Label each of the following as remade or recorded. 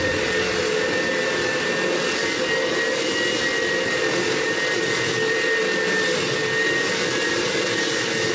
recorded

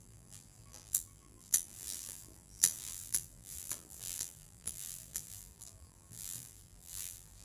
remade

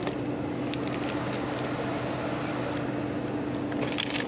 recorded